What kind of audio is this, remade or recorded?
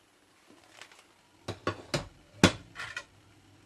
recorded